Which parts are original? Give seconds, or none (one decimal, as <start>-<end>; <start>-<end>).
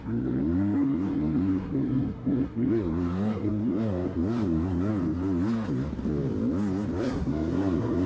4.9-7.0